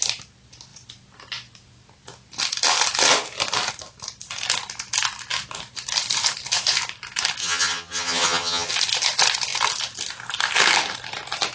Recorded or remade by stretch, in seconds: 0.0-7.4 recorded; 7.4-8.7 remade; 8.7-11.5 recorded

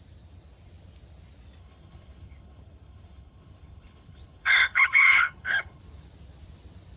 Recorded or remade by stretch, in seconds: 0.0-1.6 recorded; 1.6-5.8 remade; 5.8-7.0 recorded